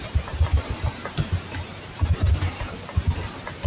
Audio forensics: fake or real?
fake